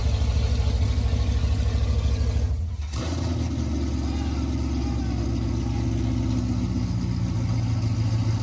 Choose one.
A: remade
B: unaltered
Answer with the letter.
B